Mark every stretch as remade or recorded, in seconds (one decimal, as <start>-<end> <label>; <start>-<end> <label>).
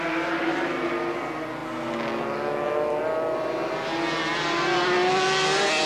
0.0-5.9 recorded